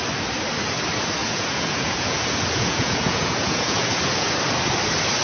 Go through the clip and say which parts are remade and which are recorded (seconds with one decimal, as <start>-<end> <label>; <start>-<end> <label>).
0.0-1.2 recorded; 1.2-4.3 remade; 4.3-5.2 recorded